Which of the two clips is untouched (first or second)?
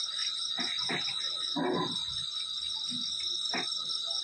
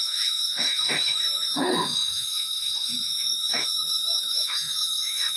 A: first